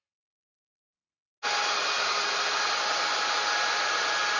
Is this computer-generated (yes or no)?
no